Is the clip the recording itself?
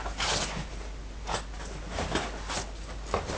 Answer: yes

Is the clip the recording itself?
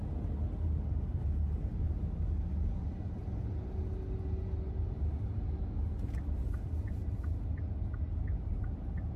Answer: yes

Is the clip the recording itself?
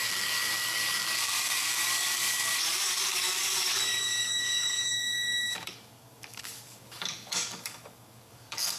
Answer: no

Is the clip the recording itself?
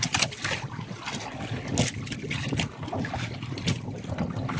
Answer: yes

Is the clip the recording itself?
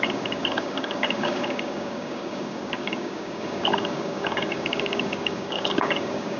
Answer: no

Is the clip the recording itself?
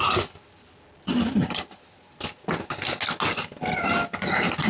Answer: yes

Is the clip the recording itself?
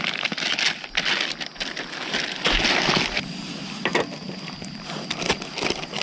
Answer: yes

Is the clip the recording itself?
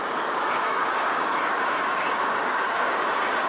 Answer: no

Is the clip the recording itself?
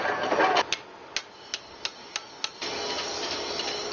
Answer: yes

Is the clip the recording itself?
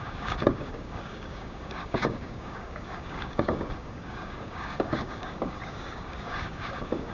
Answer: no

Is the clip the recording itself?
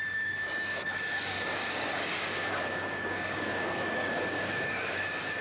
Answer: no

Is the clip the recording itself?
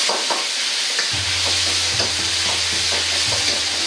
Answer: yes